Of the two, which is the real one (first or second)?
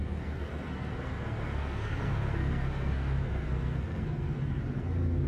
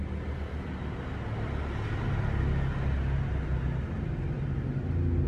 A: second